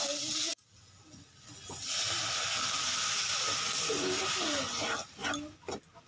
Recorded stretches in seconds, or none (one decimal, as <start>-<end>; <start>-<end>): 0.0-6.1